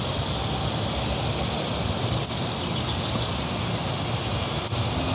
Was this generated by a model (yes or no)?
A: no